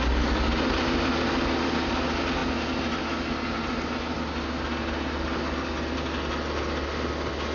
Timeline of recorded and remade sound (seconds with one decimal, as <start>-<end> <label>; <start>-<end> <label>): 0.0-7.5 recorded